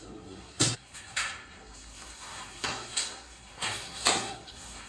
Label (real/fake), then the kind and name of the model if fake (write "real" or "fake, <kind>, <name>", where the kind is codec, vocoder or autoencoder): fake, codec, SNAC